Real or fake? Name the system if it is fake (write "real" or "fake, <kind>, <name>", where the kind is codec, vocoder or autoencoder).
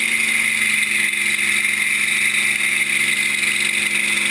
real